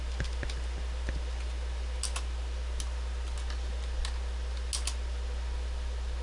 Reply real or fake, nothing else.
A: real